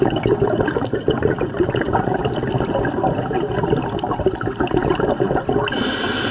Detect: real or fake real